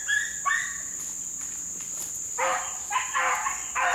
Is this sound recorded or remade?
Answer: recorded